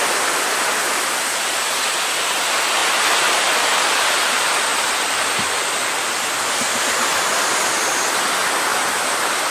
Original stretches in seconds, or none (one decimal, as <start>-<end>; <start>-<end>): 0.0-4.7; 8.0-8.7